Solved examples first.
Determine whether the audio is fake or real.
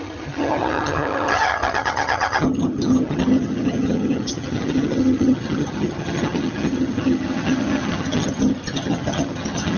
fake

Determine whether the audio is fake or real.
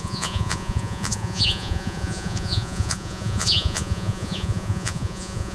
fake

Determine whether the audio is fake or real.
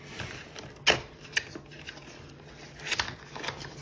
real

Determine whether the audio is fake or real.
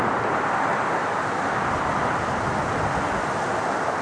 real